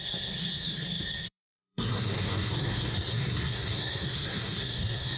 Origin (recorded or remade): remade